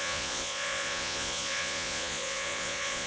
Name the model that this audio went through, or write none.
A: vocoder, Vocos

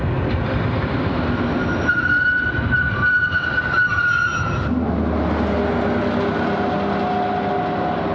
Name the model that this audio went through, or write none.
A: none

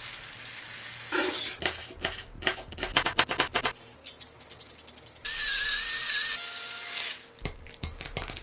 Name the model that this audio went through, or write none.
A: none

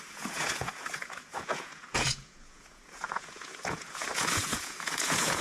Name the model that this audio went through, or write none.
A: vocoder, Vocos